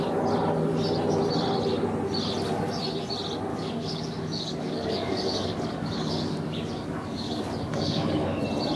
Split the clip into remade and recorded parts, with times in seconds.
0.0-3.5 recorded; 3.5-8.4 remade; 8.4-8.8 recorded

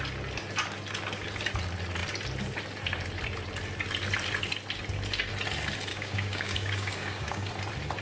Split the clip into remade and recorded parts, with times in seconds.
0.0-5.9 recorded; 5.9-7.5 remade; 7.5-8.0 recorded

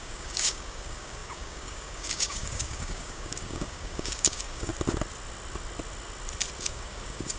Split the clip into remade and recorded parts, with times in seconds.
0.0-4.7 remade; 4.7-6.6 recorded; 6.6-7.4 remade

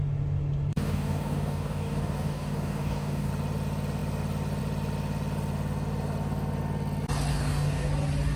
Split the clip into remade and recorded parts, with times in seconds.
0.0-0.7 recorded; 0.7-3.3 remade; 3.3-7.3 recorded; 7.3-7.9 remade; 7.9-8.4 recorded

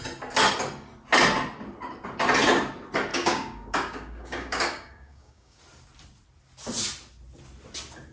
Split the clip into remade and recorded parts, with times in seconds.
0.0-3.1 recorded; 3.1-5.6 remade; 5.6-8.1 recorded